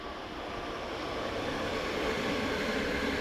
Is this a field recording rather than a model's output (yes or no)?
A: no